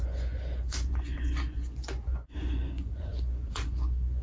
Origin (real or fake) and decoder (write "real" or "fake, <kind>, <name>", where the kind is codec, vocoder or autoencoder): fake, vocoder, Vocos